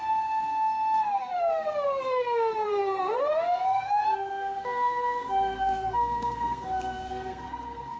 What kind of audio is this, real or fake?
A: fake